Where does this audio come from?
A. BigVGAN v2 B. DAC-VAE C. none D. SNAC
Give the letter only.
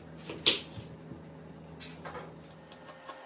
C